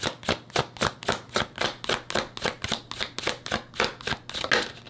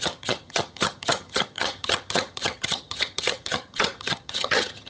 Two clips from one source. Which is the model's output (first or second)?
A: second